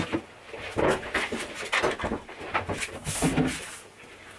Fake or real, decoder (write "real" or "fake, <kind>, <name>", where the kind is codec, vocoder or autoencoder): fake, vocoder, BigVGAN v2